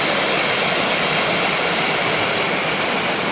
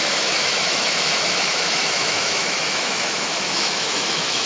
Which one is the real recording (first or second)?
first